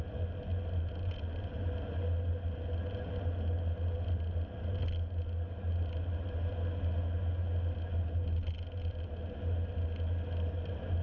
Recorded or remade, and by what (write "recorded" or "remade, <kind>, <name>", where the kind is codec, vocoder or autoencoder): recorded